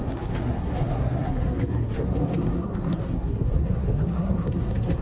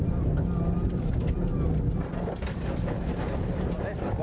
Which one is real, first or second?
second